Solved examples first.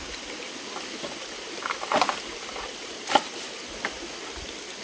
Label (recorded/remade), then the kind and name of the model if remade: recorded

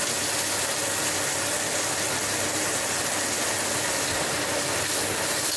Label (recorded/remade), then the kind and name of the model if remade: recorded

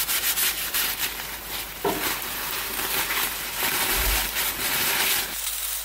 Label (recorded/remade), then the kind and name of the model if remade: remade, vocoder, BigVGAN v2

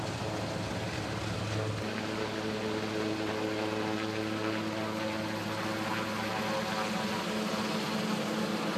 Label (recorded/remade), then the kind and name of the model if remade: recorded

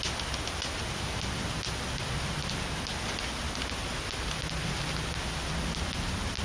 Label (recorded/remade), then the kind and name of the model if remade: recorded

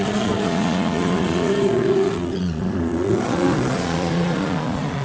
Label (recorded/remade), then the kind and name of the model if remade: remade, vocoder, Vocos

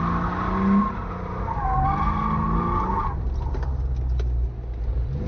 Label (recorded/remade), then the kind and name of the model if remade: recorded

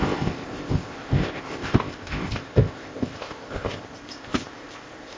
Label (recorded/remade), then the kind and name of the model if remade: remade, codec, ZipCodec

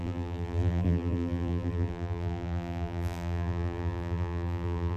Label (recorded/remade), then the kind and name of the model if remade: remade, vocoder, BigVGAN v2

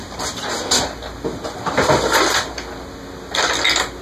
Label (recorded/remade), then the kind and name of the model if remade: recorded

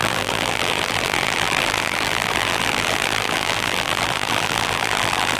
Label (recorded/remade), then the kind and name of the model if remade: remade, vocoder, BigVGAN v2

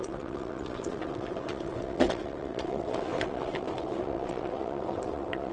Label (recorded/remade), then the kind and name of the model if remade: remade, vocoder, WaveNeXt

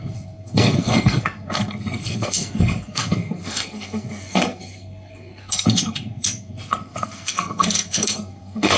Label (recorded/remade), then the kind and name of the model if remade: remade, codec, SNAC